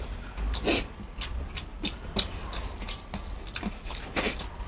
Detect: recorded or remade recorded